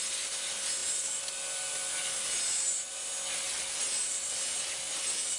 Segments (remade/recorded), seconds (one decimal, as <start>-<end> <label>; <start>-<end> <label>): 0.0-5.4 recorded